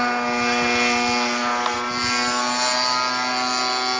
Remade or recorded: recorded